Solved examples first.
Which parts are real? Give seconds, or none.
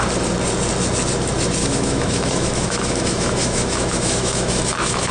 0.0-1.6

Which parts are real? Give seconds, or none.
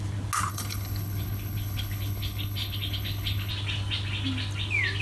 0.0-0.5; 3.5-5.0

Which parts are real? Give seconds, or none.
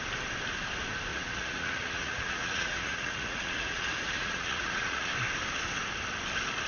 0.0-1.1; 5.1-6.7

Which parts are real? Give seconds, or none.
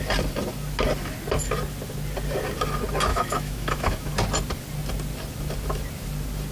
0.0-3.1; 4.1-6.5